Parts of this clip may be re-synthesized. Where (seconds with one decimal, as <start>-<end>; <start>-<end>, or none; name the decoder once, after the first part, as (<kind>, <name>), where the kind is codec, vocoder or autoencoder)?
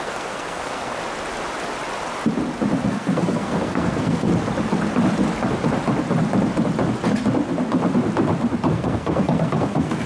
0.0-1.0 (codec, SNAC); 2.9-4.3; 8.7-10.1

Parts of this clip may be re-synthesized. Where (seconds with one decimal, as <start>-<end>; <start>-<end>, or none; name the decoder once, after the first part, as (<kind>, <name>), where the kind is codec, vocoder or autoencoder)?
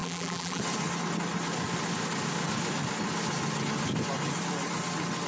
0.0-0.6 (vocoder, BigVGAN v2)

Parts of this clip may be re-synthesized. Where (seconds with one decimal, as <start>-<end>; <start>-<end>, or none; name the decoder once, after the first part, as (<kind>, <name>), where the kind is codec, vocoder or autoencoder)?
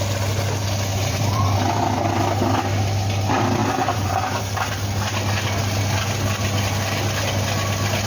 0.9-1.8 (vocoder, BigVGAN v2); 3.6-4.4